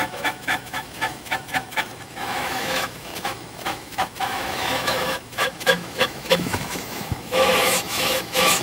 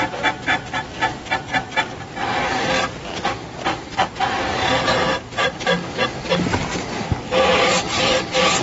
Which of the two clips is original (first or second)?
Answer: second